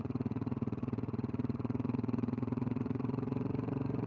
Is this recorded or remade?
remade